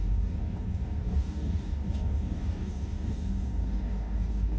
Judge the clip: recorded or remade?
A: remade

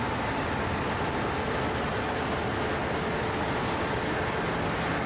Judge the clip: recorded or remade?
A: recorded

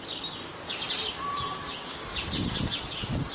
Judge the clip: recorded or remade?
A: recorded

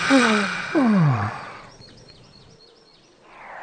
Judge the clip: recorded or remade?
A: remade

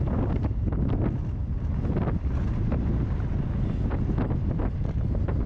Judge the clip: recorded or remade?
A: recorded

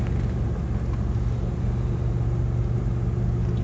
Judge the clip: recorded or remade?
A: recorded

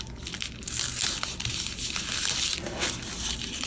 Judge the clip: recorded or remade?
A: recorded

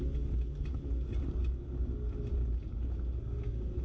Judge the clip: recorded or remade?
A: recorded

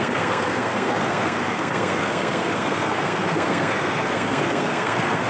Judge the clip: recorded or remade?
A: remade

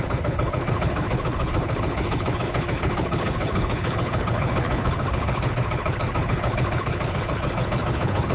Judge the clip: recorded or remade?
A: remade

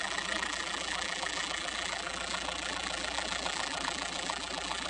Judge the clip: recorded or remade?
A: remade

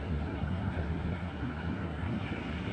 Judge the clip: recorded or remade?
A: remade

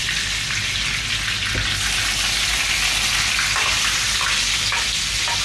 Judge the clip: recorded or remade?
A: recorded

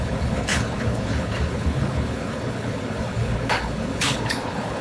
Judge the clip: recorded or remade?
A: remade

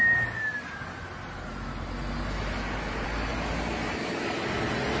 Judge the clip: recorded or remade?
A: recorded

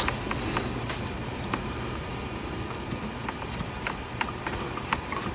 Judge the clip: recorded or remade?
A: recorded